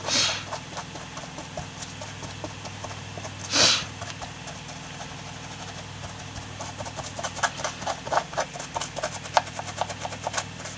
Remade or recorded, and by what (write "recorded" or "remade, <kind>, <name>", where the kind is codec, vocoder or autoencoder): recorded